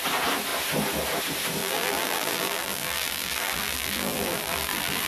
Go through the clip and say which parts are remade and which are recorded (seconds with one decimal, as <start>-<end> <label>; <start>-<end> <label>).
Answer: 0.0-1.6 recorded; 1.6-5.1 remade